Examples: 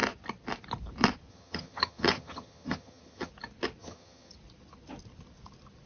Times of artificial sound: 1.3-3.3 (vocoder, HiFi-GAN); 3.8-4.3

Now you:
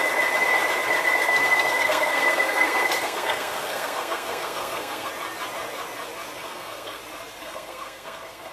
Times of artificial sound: 1.2-5.1 (codec, SNAC); 6.4-7.0; 7.4-8.5

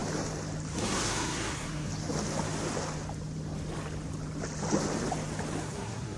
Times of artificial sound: 0.7-1.9 (codec, SNAC); 5.6-6.2

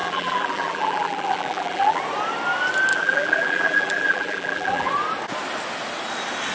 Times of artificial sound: 0.0-2.0 (vocoder, BigVGAN v2); 2.9-4.9

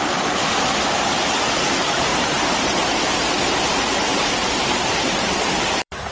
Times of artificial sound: 2.1-6.1 (vocoder, BigVGAN v2)